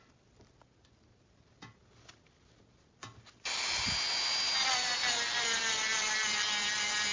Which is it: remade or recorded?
recorded